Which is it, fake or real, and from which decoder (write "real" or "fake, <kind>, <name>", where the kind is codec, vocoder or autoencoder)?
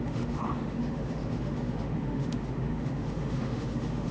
fake, autoencoder, DAC-VAE